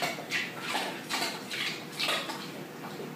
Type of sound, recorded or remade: recorded